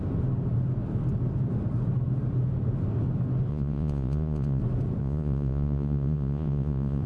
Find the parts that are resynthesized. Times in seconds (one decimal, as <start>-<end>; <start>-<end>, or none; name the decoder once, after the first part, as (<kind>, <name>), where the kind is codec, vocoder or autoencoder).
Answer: 3.5-4.6 (vocoder, Vocos); 5.0-7.1